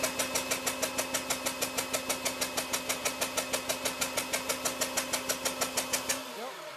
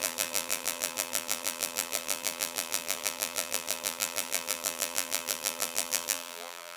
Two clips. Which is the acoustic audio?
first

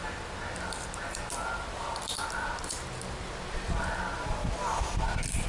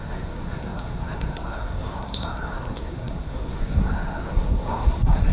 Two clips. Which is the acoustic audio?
first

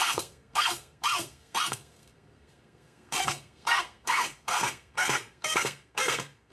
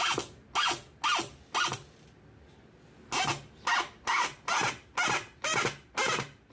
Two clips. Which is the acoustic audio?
second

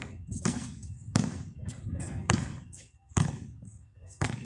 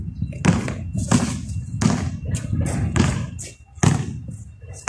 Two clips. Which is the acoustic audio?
second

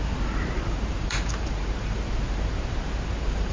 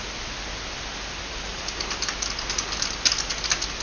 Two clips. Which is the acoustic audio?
second